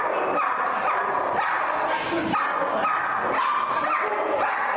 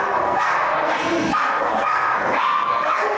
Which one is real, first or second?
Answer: first